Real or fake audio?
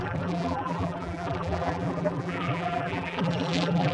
fake